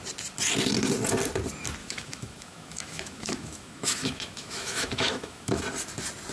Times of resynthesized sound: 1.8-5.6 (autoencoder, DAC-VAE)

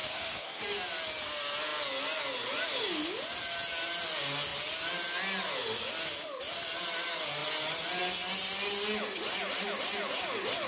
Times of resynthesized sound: 0.0-0.6 (codec, SNAC)

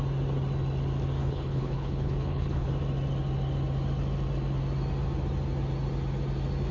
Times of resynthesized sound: 1.2-2.7 (codec, HILCodec)

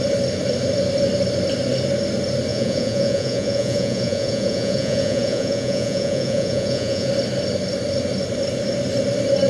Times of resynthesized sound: 2.5-7.1 (vocoder, Vocos)

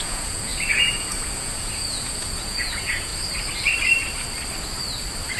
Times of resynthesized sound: 0.0-3.1 (vocoder, Vocos)